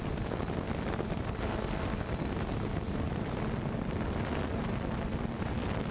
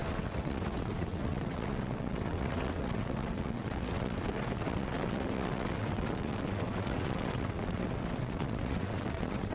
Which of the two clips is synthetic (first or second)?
second